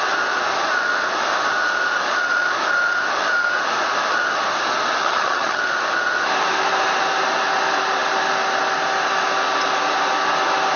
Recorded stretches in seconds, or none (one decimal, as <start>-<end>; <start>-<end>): 0.0-5.0; 5.6-10.8